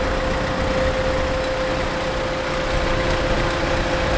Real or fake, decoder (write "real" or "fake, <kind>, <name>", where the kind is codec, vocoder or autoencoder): real